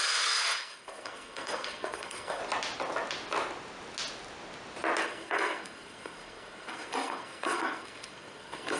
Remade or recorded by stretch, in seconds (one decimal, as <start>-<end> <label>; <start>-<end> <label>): 0.0-2.4 remade; 2.4-5.0 recorded; 5.0-8.8 remade